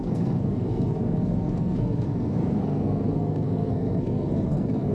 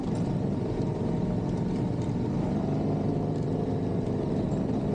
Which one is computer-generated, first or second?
first